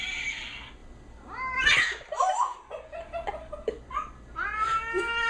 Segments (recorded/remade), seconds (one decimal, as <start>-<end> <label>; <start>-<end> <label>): 0.0-5.3 recorded